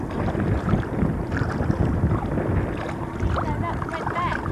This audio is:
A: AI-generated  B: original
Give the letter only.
B